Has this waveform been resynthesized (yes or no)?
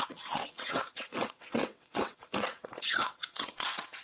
yes